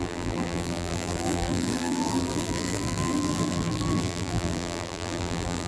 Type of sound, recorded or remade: remade